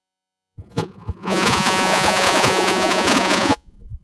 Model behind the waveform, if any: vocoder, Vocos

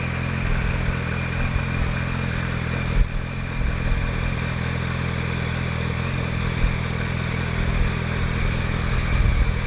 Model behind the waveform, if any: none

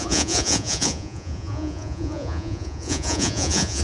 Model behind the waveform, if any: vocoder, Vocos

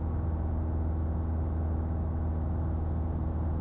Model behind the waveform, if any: none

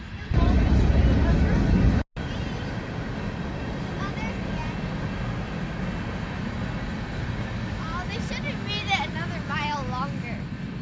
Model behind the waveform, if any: none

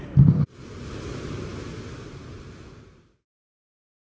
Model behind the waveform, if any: none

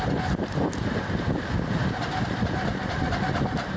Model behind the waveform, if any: none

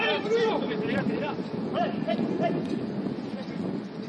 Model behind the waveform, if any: vocoder, Vocos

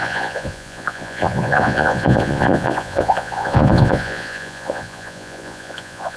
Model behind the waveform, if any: vocoder, Vocos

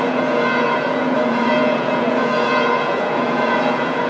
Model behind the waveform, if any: vocoder, Vocos